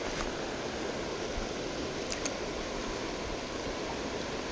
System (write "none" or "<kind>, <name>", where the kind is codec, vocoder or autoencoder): none